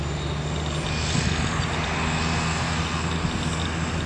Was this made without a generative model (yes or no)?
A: yes